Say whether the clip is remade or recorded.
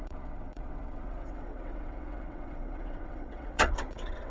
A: remade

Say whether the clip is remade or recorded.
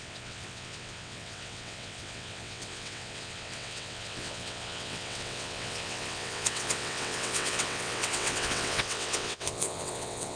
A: remade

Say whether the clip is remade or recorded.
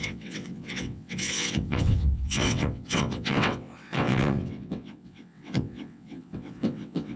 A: remade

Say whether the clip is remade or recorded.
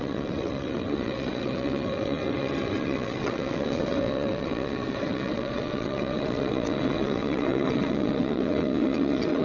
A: remade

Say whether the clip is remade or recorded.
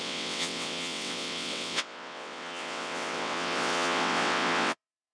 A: remade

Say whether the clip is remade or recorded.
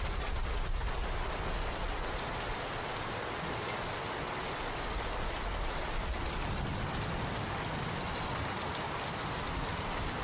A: recorded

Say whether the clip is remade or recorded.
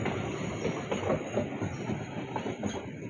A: recorded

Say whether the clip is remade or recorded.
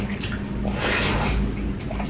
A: recorded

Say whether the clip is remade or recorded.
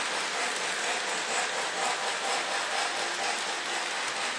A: recorded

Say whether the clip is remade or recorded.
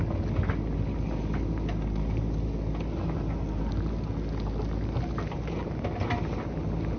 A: recorded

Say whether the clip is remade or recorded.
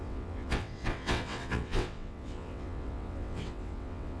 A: remade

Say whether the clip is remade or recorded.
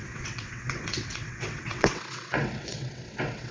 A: remade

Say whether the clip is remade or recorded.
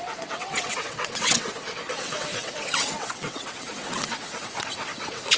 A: remade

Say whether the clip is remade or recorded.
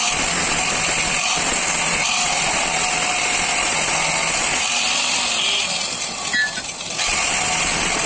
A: recorded